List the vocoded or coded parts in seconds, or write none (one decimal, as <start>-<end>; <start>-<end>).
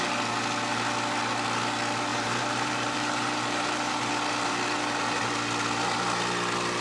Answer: 2.1-4.1